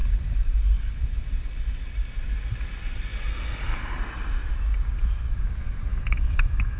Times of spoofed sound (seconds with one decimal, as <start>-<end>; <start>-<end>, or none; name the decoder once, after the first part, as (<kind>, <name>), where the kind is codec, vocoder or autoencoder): 5.9-6.8 (autoencoder, DAC-VAE)